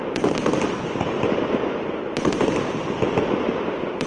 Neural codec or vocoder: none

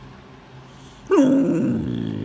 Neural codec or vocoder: none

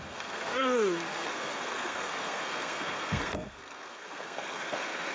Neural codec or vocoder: codec, SNAC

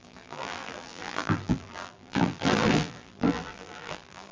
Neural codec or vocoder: vocoder, BigVGAN v2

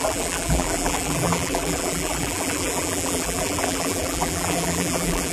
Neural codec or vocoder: vocoder, BigVGAN v2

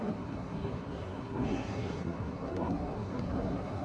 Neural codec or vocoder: codec, SNAC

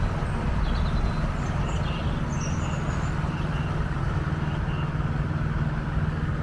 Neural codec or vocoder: none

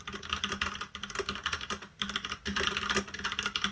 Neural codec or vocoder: vocoder, BigVGAN v2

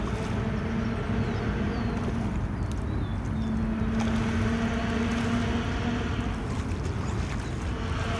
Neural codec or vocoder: none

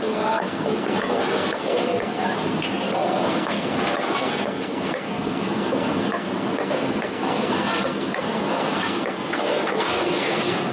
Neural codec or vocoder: codec, SNAC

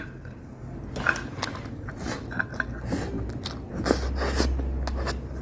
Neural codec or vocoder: none